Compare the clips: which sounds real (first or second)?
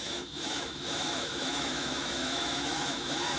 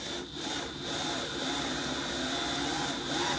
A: second